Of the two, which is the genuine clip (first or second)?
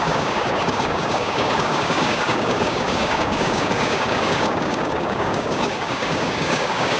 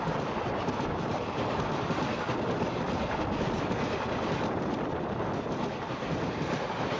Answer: second